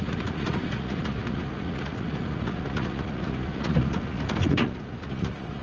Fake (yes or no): yes